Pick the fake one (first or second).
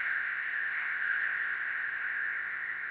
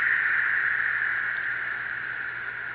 first